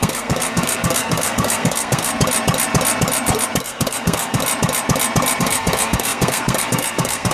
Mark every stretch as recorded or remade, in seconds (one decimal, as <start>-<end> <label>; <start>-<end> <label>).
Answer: 0.0-2.1 remade; 2.1-3.6 recorded; 3.6-4.4 remade; 4.4-5.4 recorded; 5.4-7.3 remade